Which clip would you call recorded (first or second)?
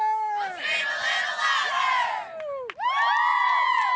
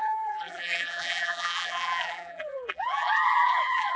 first